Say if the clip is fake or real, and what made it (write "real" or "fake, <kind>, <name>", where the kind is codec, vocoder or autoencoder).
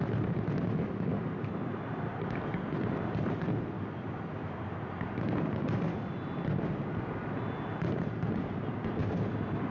real